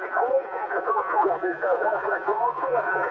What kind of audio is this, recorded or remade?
remade